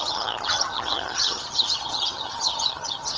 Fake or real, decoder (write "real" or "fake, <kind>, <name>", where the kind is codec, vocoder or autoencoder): fake, vocoder, HiFi-GAN